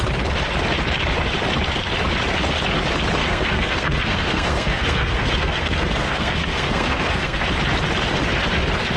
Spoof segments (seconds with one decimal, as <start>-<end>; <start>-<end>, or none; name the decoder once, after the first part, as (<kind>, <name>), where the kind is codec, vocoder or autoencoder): 3.2-7.4 (codec, SNAC)